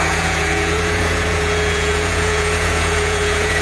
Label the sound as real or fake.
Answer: fake